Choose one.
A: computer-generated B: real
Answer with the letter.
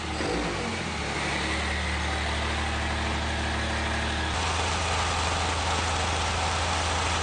B